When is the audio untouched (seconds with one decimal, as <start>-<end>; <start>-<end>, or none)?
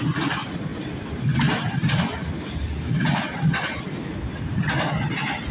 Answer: 0.0-5.5